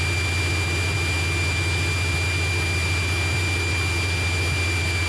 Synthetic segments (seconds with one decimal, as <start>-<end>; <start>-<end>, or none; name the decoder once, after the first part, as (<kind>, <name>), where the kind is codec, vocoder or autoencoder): none

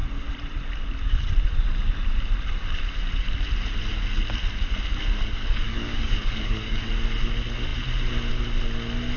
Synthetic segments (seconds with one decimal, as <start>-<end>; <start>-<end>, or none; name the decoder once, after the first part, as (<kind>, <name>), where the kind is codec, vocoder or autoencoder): 5.4-6.9 (codec, DAC)

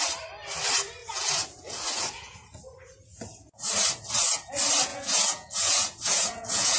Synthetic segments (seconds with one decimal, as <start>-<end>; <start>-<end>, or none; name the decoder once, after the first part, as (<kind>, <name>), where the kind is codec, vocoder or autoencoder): 1.0-2.6 (vocoder, Vocos); 3.1-3.7; 4.9-6.8